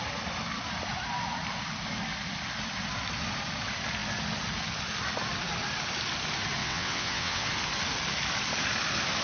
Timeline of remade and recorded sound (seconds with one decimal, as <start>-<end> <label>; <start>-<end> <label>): 0.0-6.6 recorded; 6.6-7.5 remade; 7.5-9.2 recorded